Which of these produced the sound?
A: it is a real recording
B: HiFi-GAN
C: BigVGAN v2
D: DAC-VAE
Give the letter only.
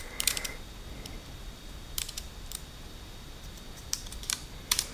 C